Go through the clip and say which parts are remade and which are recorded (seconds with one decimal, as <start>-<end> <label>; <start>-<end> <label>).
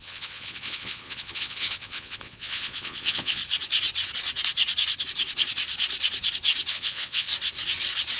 0.0-3.4 remade; 3.4-6.7 recorded; 6.7-7.3 remade; 7.3-8.2 recorded